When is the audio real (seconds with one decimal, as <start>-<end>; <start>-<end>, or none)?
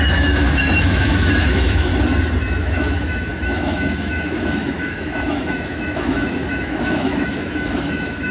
1.9-2.6